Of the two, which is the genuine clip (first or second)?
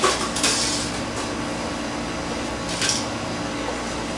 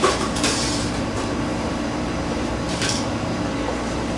first